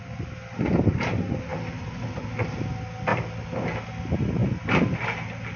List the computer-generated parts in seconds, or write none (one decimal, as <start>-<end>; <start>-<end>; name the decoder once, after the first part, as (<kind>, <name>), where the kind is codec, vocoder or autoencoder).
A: none